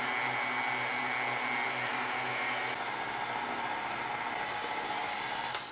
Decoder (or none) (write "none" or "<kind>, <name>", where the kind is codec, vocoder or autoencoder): none